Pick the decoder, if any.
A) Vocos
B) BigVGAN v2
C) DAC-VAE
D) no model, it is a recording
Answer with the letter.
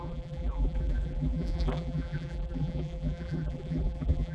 B